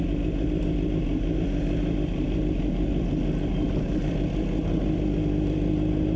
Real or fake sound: real